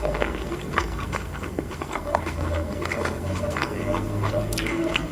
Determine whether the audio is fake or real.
fake